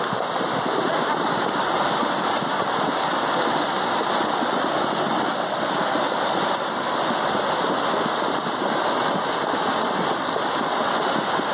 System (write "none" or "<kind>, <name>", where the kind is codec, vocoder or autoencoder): none